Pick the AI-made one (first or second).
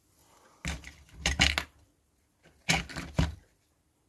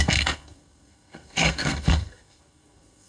second